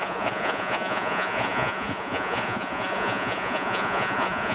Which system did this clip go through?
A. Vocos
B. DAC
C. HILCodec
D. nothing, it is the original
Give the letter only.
A